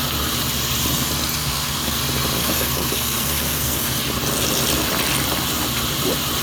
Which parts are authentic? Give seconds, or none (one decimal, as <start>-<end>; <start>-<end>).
0.0-1.4; 2.0-2.4; 4.0-6.4